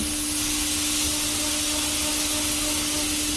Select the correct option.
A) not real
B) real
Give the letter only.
B